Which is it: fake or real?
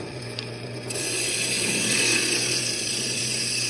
fake